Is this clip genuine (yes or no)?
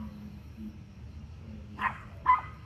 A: no